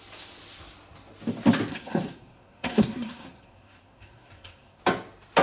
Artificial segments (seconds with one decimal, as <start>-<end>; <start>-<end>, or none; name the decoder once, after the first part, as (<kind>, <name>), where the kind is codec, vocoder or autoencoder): 1.7-4.8 (codec, SNAC)